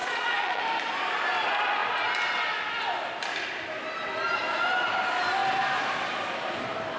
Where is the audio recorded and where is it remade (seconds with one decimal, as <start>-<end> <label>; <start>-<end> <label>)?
0.0-0.6 remade; 0.6-7.0 recorded